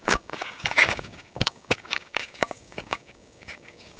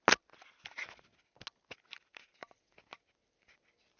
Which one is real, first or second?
second